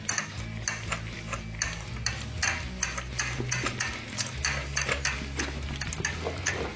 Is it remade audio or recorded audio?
recorded